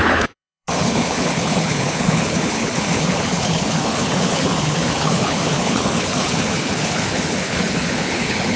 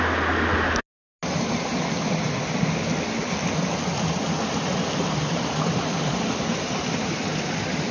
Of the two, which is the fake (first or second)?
first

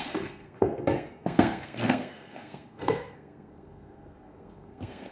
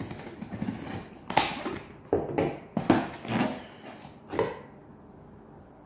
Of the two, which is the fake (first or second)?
first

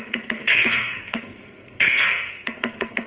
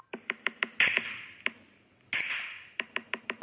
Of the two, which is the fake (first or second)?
first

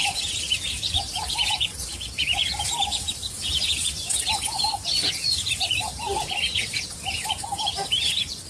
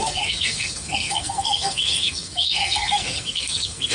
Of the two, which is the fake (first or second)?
second